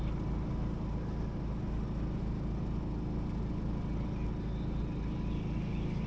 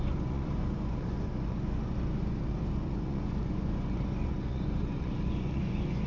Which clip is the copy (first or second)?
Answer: second